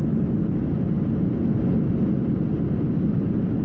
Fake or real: real